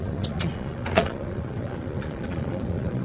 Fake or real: fake